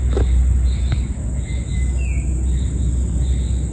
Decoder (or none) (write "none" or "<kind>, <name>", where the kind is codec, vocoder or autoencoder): none